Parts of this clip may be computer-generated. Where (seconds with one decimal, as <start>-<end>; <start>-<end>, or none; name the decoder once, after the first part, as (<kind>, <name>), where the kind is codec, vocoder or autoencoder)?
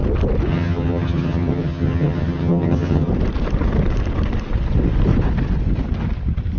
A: 0.5-3.1 (vocoder, HiFi-GAN)